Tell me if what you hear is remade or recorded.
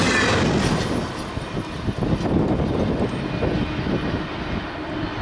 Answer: recorded